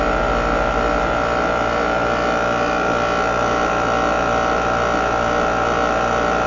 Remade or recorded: recorded